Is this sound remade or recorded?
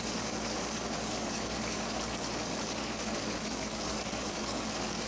remade